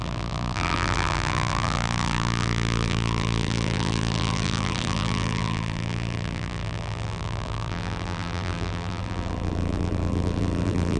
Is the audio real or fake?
fake